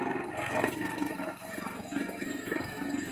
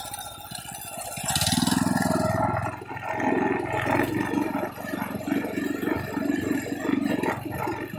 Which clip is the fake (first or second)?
first